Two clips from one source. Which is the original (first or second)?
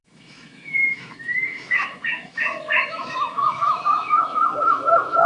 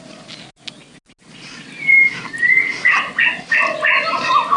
second